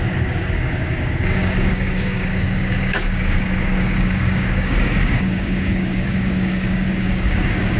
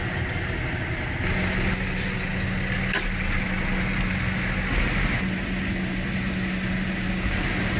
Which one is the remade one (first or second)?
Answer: first